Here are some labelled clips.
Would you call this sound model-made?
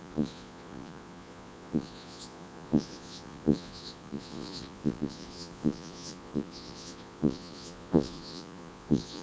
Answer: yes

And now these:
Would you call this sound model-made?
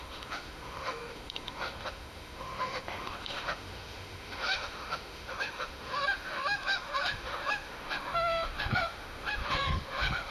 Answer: yes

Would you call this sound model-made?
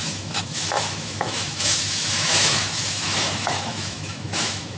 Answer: yes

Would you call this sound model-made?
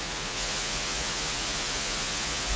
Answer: yes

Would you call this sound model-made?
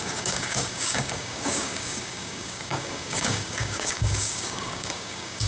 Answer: yes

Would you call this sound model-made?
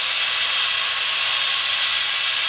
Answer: no